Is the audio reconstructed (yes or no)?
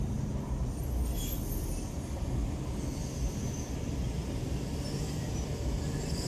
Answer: no